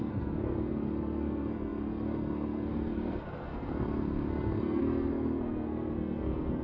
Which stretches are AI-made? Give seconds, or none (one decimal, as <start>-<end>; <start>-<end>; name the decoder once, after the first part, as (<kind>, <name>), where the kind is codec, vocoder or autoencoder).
0.0-6.6 (codec, SNAC)